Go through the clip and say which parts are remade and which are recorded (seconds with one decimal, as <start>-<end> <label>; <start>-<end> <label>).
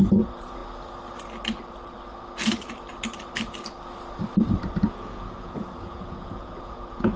0.0-0.6 remade; 0.6-4.9 recorded; 4.9-7.2 remade